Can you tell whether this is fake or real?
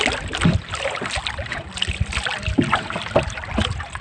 real